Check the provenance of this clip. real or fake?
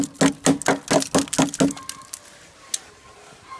real